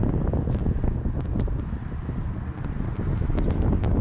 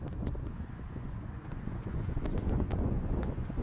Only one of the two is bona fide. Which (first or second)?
first